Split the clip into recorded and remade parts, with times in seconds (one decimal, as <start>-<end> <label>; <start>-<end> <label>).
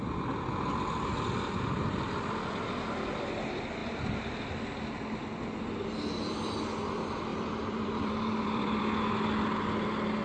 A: 0.0-7.3 recorded; 7.3-8.8 remade; 8.8-10.2 recorded